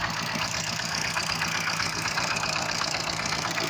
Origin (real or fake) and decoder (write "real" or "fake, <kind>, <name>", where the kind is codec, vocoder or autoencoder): fake, codec, SNAC